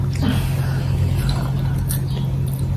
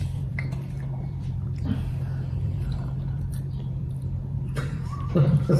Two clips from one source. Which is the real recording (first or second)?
first